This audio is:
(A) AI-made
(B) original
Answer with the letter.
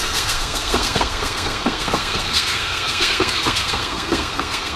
A